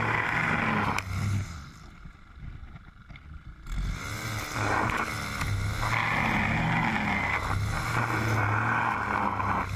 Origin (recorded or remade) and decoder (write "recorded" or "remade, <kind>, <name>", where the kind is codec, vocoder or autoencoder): recorded